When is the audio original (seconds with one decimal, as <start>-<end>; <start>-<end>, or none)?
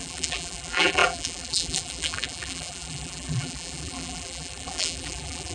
none